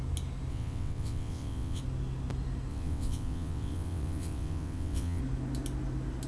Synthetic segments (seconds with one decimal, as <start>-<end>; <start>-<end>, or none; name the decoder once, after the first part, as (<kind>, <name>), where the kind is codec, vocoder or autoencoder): 0.5-1.8 (vocoder, WaveNeXt); 2.7-5.2